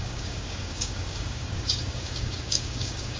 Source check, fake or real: fake